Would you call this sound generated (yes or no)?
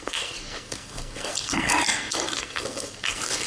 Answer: yes